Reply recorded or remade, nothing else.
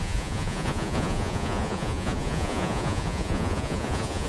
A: remade